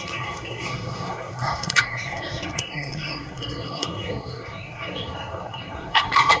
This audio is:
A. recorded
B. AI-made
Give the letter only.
B